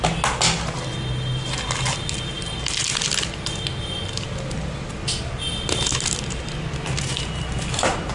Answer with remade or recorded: recorded